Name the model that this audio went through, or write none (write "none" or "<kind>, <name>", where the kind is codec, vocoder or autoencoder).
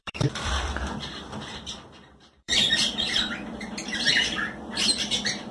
vocoder, BigVGAN v2